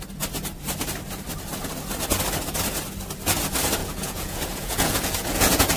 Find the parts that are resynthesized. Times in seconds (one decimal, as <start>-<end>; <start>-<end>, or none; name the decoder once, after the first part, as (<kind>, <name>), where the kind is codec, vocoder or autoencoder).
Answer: 3.8-5.8 (vocoder, Vocos)